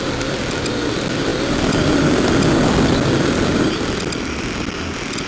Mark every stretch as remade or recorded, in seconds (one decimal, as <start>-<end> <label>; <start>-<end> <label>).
0.0-5.3 recorded